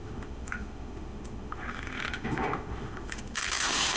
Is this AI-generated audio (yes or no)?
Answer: yes